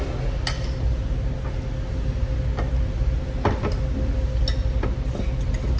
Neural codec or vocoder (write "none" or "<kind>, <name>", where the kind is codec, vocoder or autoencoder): none